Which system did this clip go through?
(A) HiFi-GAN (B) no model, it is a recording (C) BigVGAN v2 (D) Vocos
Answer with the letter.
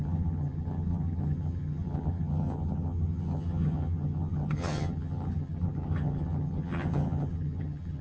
A